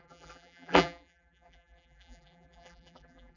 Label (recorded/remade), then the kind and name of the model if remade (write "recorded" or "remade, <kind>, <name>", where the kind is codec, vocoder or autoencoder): remade, vocoder, BigVGAN v2